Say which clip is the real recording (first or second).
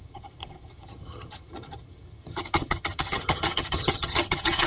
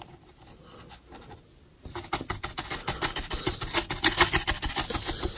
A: second